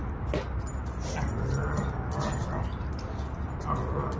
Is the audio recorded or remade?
recorded